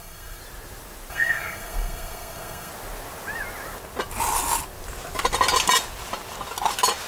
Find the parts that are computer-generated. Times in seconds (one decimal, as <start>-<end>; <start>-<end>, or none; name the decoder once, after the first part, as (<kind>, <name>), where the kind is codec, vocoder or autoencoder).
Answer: 0.0-0.4 (codec, SNAC); 1.1-2.7